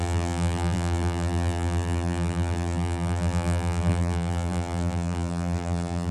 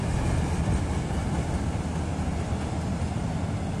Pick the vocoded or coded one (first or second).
first